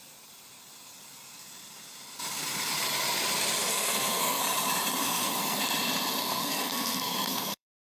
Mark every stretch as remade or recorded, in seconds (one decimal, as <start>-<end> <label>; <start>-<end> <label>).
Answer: 0.0-3.7 recorded; 3.7-4.4 remade; 4.4-5.0 recorded; 5.0-5.6 remade; 5.6-6.2 recorded; 6.2-7.9 remade